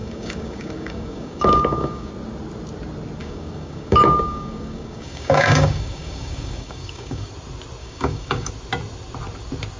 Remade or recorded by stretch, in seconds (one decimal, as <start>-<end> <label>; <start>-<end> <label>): 0.0-2.1 remade; 2.1-3.2 recorded; 3.2-7.3 remade; 7.3-7.8 recorded; 7.8-8.5 remade; 8.5-9.8 recorded